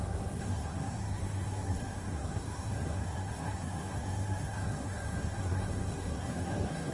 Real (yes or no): no